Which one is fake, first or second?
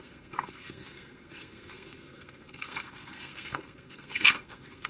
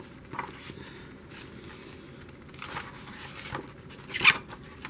first